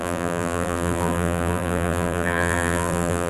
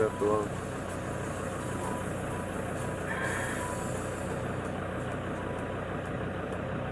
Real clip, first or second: second